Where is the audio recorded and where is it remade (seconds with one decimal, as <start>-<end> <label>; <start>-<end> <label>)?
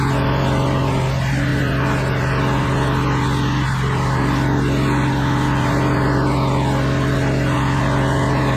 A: 0.0-8.6 recorded